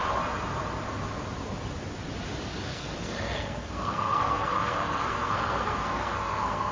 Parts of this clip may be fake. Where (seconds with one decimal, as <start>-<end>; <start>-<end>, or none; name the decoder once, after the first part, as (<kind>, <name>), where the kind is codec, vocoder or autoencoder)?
2.7-6.7 (codec, SNAC)